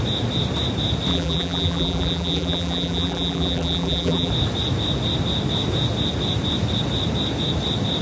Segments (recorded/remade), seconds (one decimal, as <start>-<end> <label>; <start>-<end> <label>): 0.0-1.1 recorded; 1.1-4.3 remade; 4.3-8.0 recorded